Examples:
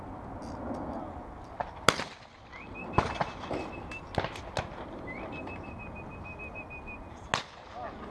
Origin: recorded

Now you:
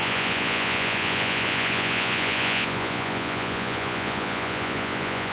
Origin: remade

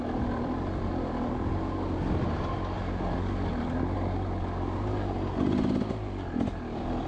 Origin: recorded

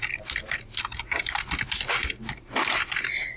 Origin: recorded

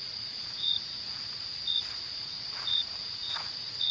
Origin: remade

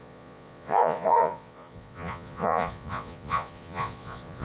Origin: remade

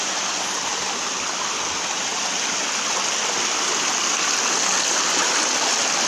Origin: recorded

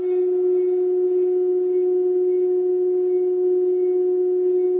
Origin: recorded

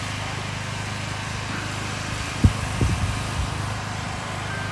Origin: recorded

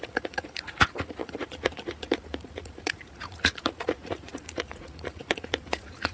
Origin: remade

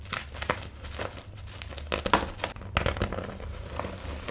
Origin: recorded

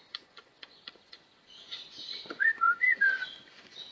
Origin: remade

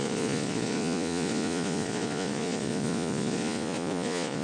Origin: remade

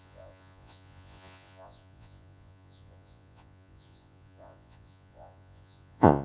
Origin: remade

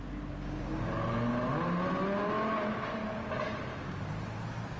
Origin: recorded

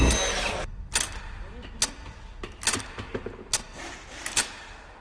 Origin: recorded